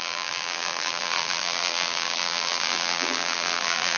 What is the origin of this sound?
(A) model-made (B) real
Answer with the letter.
A